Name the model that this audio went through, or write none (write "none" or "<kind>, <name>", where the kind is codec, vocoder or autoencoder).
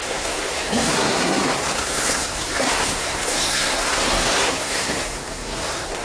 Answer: codec, SNAC